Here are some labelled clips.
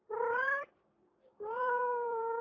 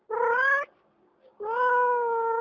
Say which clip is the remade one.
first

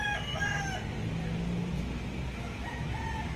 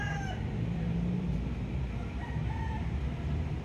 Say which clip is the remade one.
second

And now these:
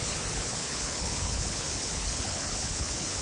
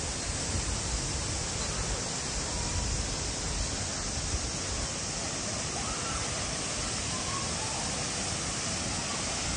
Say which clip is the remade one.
first